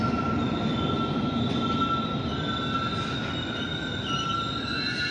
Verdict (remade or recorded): recorded